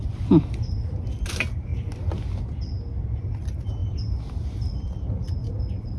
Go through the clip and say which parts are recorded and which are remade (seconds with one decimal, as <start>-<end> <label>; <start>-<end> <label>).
0.0-6.0 recorded